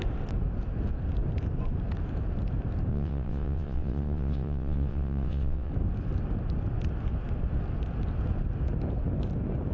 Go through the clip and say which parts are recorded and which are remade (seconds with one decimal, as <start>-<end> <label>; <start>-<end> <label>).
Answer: 0.0-2.9 recorded; 2.9-5.7 remade; 5.7-9.7 recorded